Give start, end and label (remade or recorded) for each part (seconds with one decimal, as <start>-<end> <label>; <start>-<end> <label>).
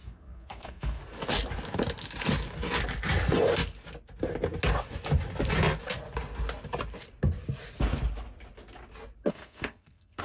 0.0-1.0 remade; 1.0-9.3 recorded; 9.3-10.2 remade